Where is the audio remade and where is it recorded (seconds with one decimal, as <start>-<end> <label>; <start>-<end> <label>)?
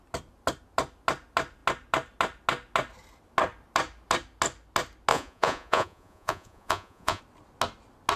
0.0-5.1 recorded; 5.1-7.2 remade; 7.2-8.2 recorded